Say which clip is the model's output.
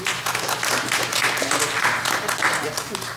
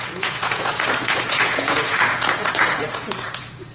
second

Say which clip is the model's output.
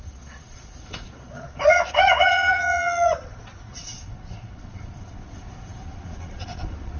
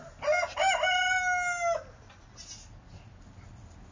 first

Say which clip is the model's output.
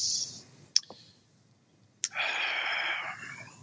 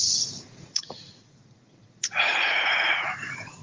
second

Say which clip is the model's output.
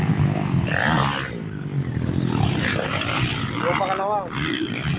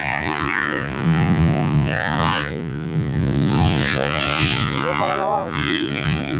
second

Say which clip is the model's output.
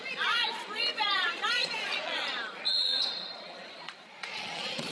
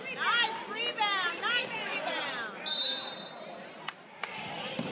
first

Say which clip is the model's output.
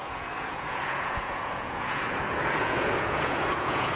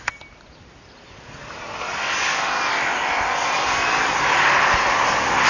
first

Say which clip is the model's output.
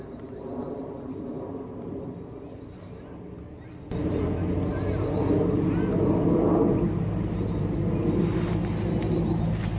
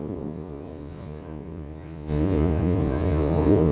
second